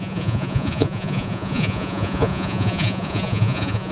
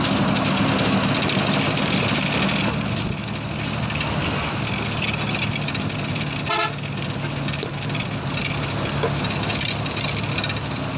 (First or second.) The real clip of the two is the second